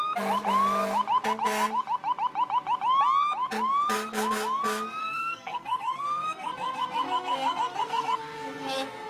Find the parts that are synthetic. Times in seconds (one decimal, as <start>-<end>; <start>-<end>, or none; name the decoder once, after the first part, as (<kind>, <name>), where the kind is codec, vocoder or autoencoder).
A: 5.0-9.1 (codec, SNAC)